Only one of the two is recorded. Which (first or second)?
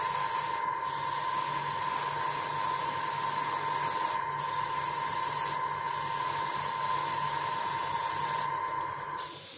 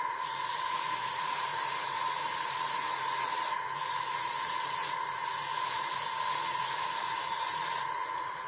first